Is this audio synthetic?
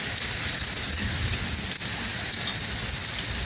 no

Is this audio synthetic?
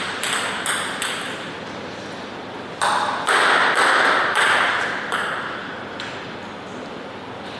no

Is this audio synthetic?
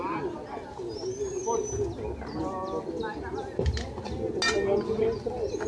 no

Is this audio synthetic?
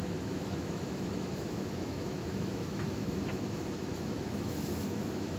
yes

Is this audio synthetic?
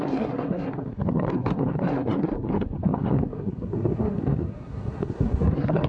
yes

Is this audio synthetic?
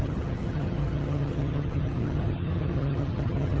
yes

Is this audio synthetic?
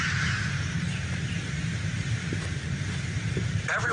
yes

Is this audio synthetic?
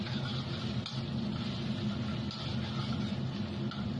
no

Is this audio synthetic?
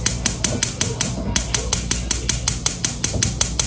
no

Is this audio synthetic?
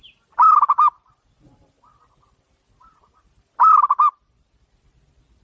no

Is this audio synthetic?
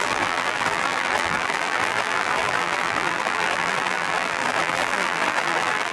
yes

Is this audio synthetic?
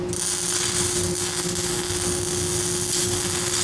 no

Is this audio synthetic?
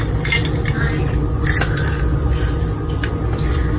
no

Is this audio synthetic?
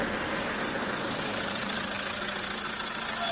no